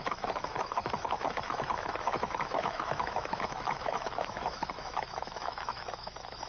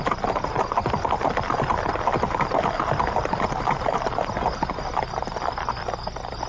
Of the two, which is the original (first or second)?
second